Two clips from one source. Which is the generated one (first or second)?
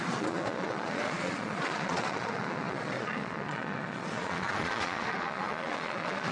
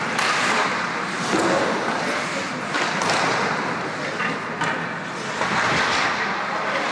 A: first